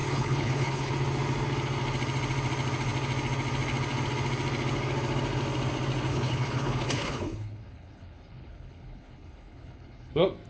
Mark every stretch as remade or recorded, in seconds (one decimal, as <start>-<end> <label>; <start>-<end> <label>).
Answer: 0.0-0.9 remade; 0.9-6.1 recorded; 6.1-10.1 remade; 10.1-10.5 recorded